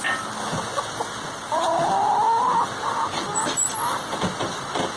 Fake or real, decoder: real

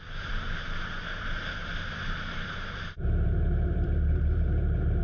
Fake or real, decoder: fake, vocoder, BigVGAN v2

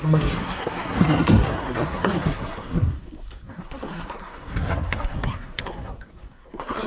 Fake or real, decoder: fake, codec, SNAC